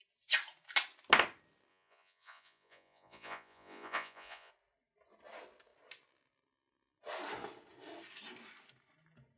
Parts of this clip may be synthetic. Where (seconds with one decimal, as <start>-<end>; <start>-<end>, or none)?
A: 1.7-4.5